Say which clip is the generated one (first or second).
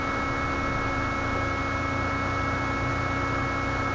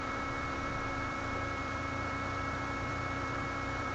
second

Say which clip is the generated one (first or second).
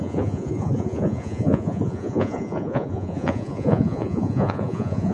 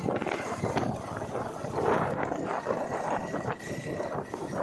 first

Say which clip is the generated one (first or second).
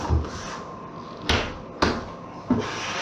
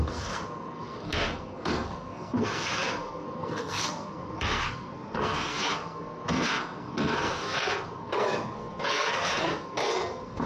second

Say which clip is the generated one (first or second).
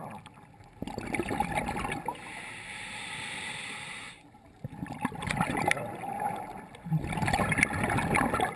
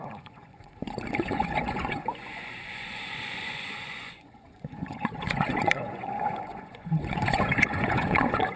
second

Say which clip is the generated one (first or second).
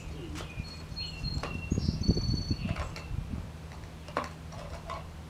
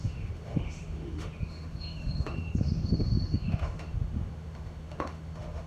second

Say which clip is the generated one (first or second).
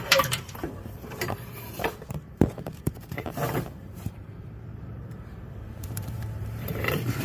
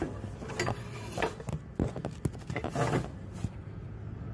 first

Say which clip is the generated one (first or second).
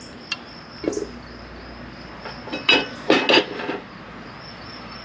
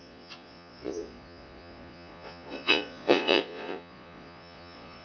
second